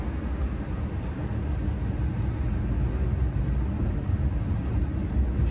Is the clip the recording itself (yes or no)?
yes